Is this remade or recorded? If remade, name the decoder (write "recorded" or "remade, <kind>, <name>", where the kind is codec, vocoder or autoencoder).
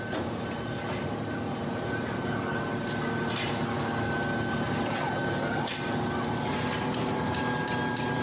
recorded